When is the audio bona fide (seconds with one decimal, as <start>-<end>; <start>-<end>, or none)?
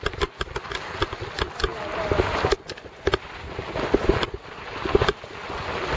0.0-6.0